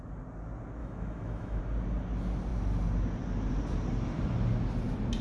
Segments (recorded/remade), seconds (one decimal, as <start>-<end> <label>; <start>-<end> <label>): 0.0-0.8 recorded; 0.8-1.6 remade; 1.6-5.2 recorded